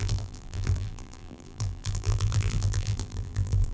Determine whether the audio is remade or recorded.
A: remade